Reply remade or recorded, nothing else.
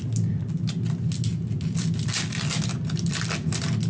recorded